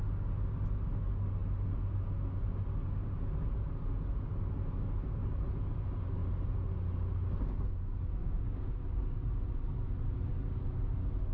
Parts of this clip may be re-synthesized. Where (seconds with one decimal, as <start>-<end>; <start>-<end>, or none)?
8.2-8.7